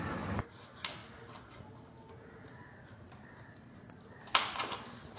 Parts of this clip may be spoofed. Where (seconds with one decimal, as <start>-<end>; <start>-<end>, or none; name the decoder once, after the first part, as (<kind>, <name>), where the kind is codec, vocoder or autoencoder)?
none